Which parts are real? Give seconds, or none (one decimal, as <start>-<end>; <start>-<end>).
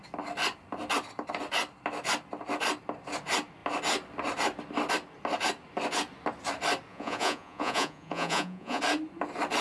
0.0-6.9; 8.8-9.6